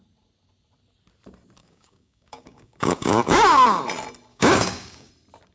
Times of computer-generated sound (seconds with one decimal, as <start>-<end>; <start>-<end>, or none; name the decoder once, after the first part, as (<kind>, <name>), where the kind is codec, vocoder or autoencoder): 1.6-3.8 (codec, DAC); 4.3-5.1